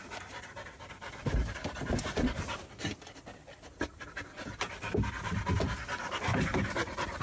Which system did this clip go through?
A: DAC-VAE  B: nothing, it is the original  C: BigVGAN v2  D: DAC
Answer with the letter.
B